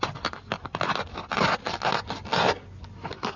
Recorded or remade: recorded